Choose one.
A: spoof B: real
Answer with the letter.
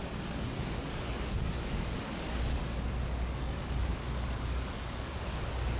A